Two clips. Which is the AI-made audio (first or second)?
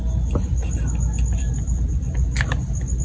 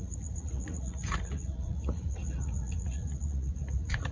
second